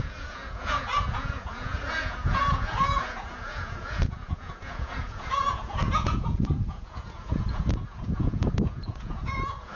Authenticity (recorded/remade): remade